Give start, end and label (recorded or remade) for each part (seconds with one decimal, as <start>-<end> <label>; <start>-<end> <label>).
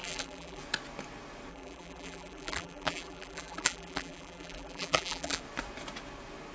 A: 0.0-0.6 remade; 0.6-1.5 recorded; 1.5-5.4 remade; 5.4-6.5 recorded